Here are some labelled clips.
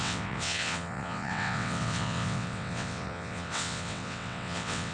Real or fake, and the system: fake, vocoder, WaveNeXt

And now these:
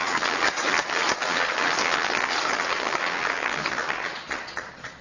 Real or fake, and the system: fake, vocoder, Vocos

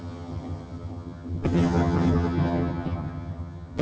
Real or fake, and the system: fake, vocoder, HiFi-GAN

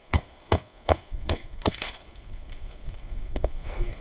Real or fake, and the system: fake, codec, SNAC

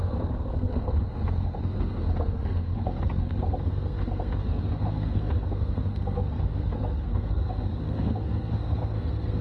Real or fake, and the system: fake, codec, SNAC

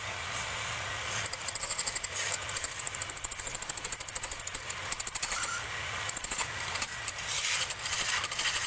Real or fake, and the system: real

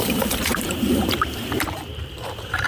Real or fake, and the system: fake, vocoder, BigVGAN v2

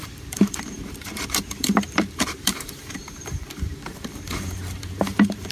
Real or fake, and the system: fake, vocoder, BigVGAN v2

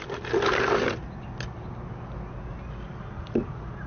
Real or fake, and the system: real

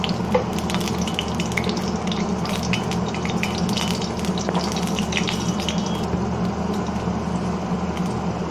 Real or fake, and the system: real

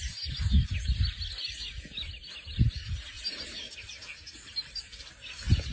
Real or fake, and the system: real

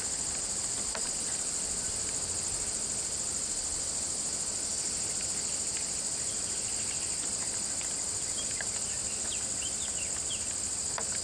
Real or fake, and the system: real